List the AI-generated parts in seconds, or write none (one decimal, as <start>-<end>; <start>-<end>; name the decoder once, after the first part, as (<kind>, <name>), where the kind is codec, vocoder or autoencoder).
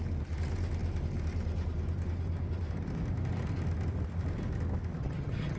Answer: 5.0-5.6 (vocoder, HiFi-GAN)